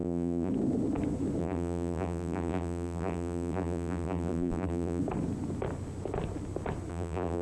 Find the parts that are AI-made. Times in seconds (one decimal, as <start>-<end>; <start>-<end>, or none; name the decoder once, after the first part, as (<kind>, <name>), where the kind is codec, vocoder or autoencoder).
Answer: 0.0-0.5 (vocoder, BigVGAN v2); 1.4-5.0; 6.9-7.4